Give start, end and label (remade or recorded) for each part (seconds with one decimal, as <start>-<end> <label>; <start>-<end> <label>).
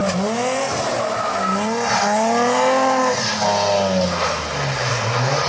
0.0-5.5 recorded